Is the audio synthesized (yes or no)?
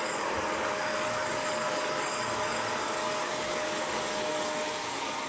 yes